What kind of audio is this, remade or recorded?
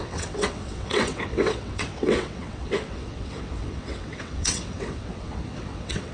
remade